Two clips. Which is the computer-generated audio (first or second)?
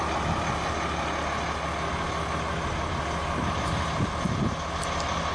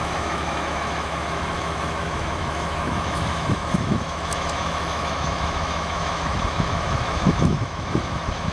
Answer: second